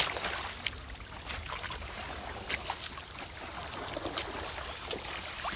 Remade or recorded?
recorded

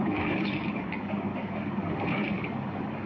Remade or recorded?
remade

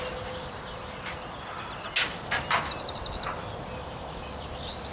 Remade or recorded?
recorded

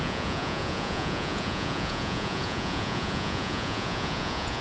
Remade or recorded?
remade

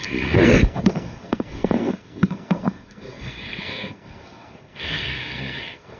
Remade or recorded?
remade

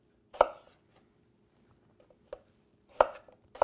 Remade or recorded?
recorded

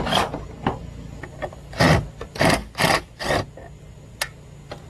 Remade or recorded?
recorded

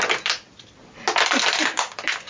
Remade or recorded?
recorded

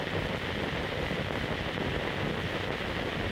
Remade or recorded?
recorded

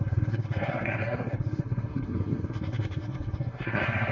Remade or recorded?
remade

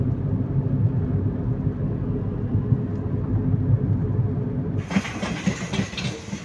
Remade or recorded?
recorded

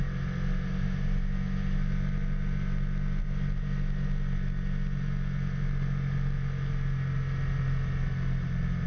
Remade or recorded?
recorded